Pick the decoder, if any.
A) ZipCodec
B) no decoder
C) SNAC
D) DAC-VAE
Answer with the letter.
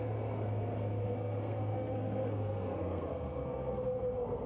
C